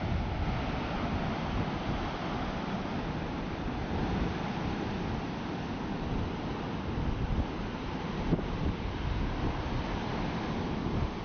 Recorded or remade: recorded